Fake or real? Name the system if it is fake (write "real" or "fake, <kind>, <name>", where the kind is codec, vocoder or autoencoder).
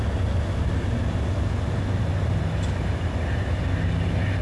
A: real